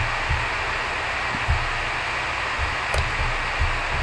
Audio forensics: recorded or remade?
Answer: recorded